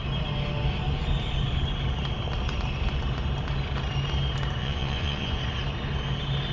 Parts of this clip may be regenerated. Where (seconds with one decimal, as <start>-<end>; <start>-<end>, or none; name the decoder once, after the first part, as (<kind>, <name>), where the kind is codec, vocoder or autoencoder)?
4.6-5.4 (vocoder, Vocos)